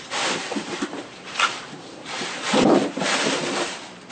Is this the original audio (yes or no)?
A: no